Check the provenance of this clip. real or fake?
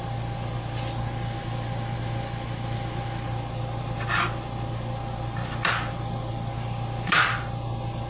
real